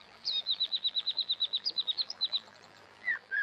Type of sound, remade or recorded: remade